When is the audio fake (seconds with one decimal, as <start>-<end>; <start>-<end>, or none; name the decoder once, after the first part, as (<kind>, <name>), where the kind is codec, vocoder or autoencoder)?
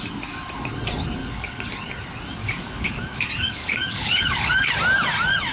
1.2-1.7 (codec, DAC); 2.4-4.7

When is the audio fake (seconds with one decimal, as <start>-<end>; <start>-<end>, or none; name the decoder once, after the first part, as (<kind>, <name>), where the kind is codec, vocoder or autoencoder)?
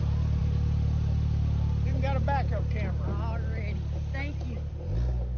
none